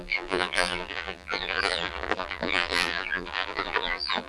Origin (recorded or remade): remade